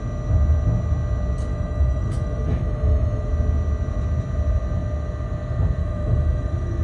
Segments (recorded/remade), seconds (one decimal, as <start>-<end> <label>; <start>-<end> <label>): 0.0-1.5 recorded; 1.5-3.3 remade; 3.3-5.8 recorded; 5.8-6.8 remade